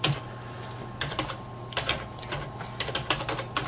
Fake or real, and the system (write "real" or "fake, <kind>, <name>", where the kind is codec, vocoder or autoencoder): real